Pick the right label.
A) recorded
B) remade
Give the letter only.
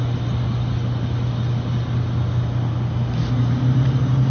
A